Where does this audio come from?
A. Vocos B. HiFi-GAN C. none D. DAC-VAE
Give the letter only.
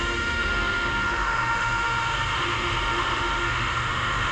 D